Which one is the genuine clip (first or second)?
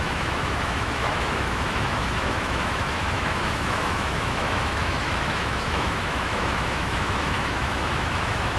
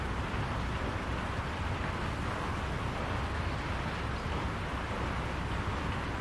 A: second